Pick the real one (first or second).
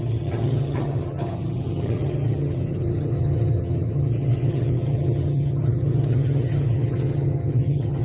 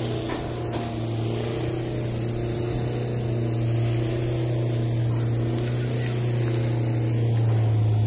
second